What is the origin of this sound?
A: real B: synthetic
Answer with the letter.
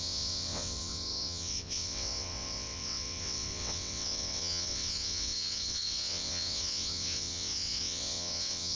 B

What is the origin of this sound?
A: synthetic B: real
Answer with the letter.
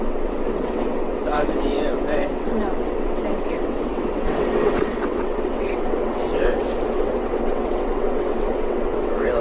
A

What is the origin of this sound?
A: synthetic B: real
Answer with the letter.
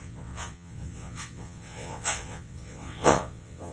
A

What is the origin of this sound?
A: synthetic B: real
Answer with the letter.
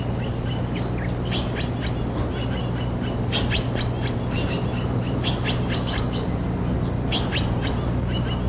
B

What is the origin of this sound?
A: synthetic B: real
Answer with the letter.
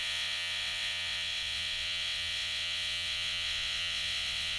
A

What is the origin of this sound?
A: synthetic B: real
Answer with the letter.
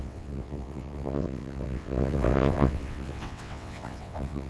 A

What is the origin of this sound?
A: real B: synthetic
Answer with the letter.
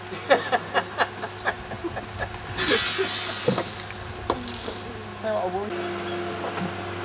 A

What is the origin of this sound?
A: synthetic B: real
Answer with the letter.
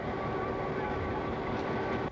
B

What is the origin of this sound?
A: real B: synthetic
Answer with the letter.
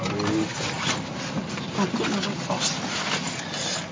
A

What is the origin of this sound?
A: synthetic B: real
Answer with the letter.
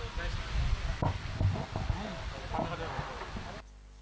B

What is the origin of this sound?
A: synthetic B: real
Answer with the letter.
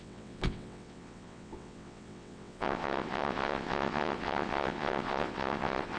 A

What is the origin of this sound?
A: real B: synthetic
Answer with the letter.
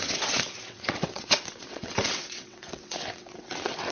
B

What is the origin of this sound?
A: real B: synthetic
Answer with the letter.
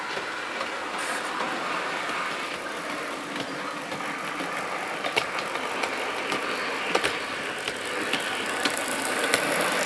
A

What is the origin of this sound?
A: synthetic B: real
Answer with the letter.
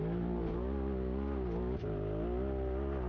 B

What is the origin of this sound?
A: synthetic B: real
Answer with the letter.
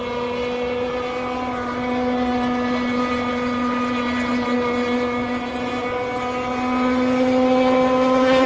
B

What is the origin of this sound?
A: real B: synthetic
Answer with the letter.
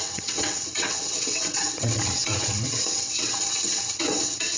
B